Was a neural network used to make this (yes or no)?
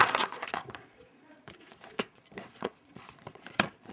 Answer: yes